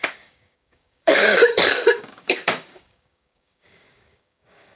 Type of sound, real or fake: fake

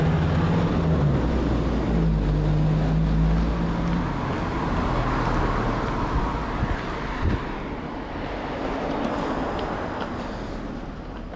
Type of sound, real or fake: real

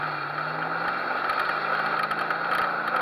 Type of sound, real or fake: real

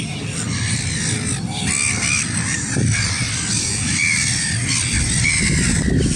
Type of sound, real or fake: real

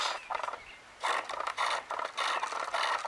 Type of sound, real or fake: real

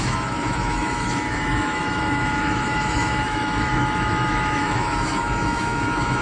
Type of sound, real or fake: fake